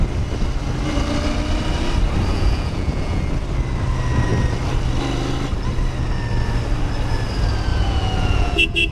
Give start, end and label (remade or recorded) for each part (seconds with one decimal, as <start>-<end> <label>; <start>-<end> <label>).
0.0-2.3 recorded; 2.3-3.2 remade; 3.2-7.7 recorded; 7.7-8.9 remade